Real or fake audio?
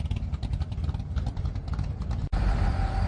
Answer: fake